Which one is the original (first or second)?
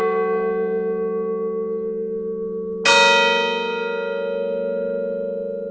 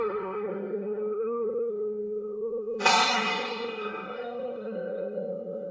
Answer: first